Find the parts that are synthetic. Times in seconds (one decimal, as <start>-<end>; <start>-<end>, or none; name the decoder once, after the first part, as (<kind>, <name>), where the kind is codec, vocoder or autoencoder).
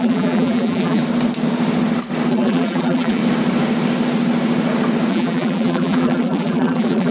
0.0-1.0 (vocoder, BigVGAN v2); 2.3-3.2; 5.1-7.1